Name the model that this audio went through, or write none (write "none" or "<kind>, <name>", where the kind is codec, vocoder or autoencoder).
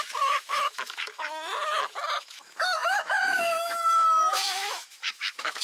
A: autoencoder, DAC-VAE